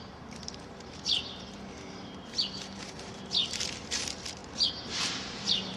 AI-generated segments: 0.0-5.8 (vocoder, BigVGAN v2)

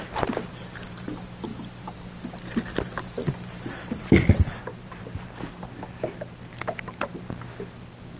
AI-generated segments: none

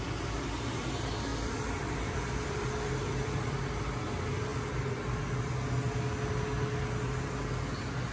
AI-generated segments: 1.3-3.6 (vocoder, BigVGAN v2)

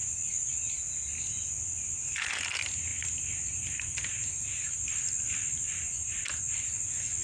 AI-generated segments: 0.0-0.5 (vocoder, BigVGAN v2)

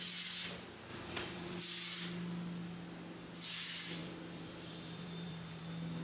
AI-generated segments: 0.9-1.6 (vocoder, BigVGAN v2); 4.0-5.6